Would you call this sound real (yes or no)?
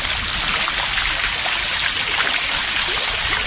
yes